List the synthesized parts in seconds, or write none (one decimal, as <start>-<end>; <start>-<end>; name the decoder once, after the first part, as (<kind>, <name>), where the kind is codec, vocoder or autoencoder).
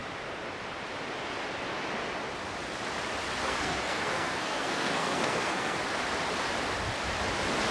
3.4-5.8 (codec, SNAC)